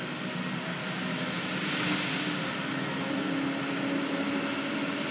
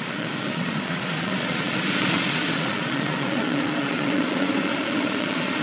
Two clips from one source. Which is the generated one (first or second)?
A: second